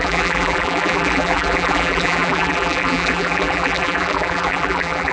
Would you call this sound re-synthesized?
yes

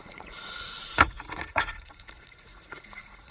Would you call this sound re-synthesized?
yes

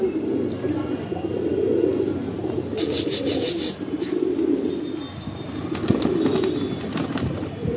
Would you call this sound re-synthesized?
no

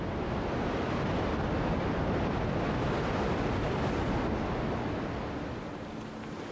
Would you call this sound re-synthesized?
no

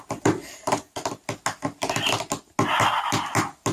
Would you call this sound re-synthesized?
no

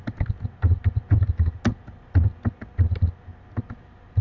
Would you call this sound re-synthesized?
no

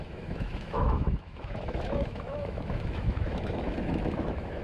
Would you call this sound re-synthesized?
yes